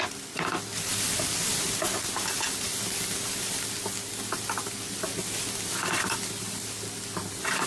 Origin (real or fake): real